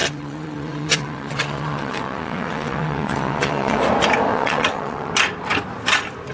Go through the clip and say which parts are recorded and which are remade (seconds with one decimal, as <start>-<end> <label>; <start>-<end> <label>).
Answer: 0.0-3.8 remade; 3.8-4.3 recorded; 4.3-5.1 remade; 5.1-6.3 recorded